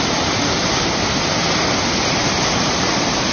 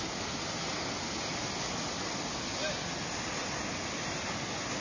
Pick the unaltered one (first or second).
second